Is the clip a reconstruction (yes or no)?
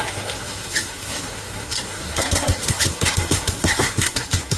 yes